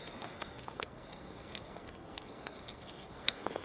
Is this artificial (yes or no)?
yes